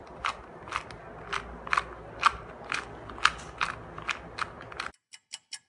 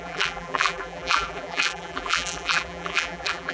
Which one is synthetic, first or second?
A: second